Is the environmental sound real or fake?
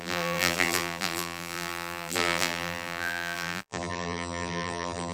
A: fake